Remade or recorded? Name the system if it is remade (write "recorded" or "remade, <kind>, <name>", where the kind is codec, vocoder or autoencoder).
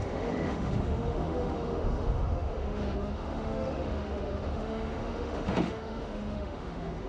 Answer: remade, autoencoder, DAC-VAE